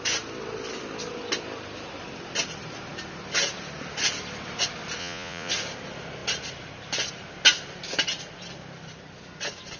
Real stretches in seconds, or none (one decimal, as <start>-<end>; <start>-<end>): 0.0-5.0; 5.5-9.8